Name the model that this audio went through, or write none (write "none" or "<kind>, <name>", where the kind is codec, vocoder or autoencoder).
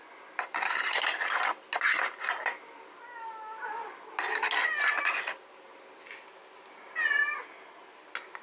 none